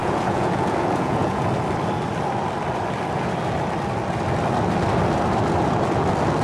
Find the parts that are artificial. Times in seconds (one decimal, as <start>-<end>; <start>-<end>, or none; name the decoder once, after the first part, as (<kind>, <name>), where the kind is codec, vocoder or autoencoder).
0.0-1.5 (vocoder, Vocos)